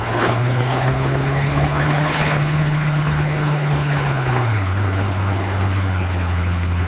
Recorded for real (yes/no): no